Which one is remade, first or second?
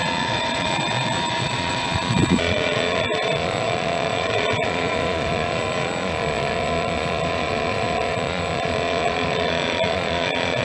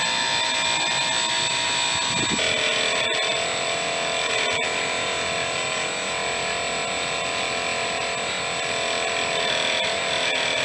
first